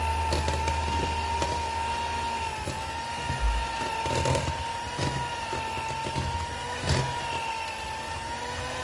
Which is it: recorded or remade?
recorded